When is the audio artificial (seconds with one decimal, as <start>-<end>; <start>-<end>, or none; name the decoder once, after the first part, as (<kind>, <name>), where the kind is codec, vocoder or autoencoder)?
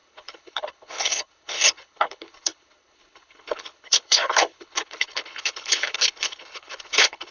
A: 0.0-7.3 (codec, HILCodec)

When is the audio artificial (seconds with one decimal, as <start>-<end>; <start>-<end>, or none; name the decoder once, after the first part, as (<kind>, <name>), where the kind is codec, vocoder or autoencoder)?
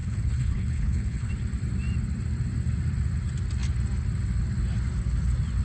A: 0.0-1.3 (codec, HILCodec)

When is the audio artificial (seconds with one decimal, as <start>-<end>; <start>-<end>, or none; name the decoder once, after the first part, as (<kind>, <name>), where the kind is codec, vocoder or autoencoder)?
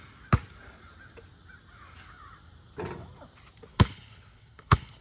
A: 3.7-5.0 (codec, HILCodec)